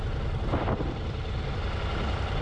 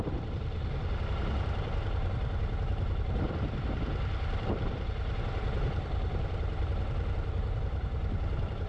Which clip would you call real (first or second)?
first